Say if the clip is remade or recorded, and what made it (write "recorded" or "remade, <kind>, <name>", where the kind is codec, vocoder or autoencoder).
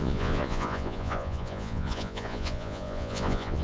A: remade, vocoder, Vocos